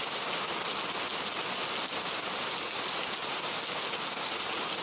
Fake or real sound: real